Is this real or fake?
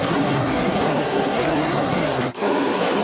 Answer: fake